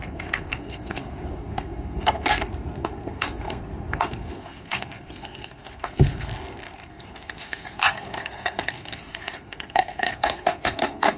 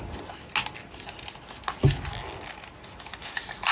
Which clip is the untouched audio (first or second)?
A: second